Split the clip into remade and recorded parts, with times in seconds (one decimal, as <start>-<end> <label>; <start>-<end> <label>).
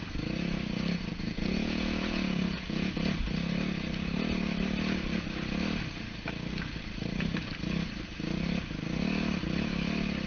0.0-1.1 recorded; 1.1-2.9 remade; 2.9-10.3 recorded